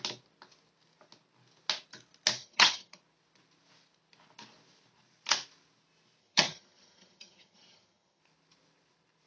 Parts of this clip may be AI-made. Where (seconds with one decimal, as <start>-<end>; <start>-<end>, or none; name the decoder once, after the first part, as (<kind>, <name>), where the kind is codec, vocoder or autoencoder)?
2.4-3.0 (vocoder, HiFi-GAN); 6.2-8.2